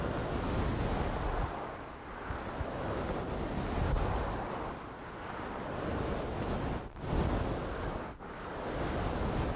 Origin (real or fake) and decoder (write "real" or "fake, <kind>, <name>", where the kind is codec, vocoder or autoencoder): real